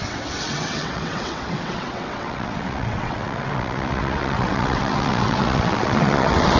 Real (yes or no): no